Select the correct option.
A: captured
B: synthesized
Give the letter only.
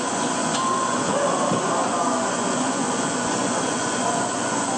B